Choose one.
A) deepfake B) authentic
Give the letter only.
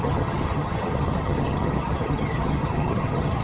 A